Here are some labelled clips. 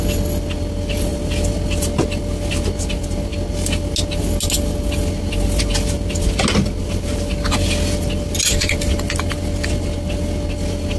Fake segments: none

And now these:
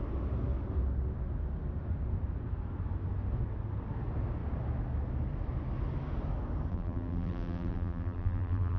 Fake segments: 6.7-8.8 (vocoder, BigVGAN v2)

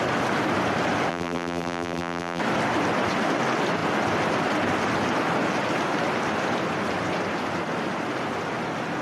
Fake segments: 1.1-2.4 (vocoder, BigVGAN v2)